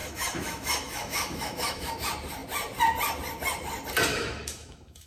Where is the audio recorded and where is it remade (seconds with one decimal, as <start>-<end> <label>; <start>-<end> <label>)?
0.0-1.9 remade; 1.9-4.1 recorded; 4.1-5.1 remade